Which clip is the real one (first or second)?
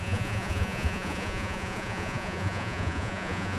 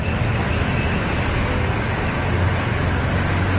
second